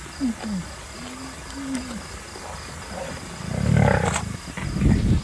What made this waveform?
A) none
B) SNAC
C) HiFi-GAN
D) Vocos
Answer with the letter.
A